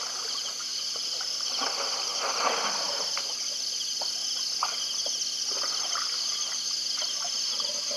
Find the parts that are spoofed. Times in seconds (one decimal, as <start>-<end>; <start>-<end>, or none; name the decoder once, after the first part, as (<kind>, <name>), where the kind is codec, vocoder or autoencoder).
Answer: none